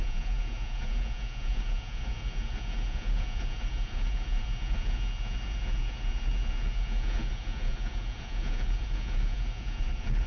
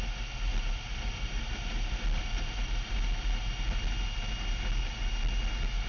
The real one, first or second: second